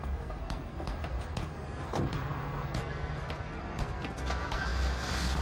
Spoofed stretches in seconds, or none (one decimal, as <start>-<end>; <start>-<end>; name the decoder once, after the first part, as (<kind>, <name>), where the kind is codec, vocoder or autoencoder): 0.0-5.4 (codec, SNAC)